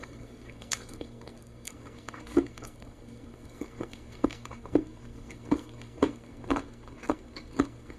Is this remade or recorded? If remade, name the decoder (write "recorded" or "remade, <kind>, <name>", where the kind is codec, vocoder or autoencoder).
remade, codec, SNAC